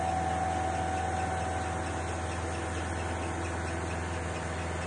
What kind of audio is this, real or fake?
real